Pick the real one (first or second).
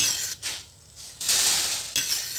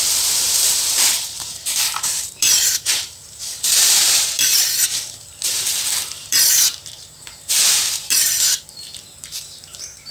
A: first